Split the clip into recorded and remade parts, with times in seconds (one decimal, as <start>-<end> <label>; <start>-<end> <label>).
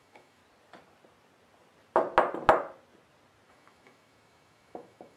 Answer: 0.0-0.4 remade; 0.4-3.5 recorded; 3.5-5.2 remade